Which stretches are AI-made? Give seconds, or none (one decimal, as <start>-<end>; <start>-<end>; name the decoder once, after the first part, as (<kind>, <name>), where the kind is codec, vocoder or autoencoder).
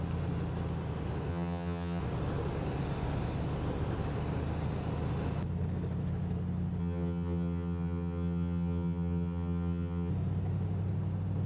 1.3-2.0 (vocoder, HiFi-GAN); 6.8-10.1